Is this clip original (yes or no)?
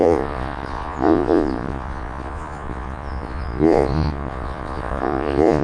no